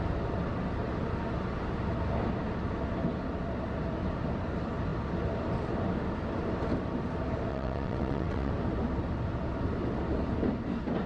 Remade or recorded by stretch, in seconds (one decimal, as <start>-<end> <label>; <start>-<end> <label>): 0.0-7.5 recorded; 7.5-8.5 remade; 8.5-11.1 recorded